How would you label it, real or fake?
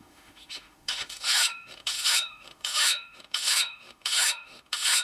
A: fake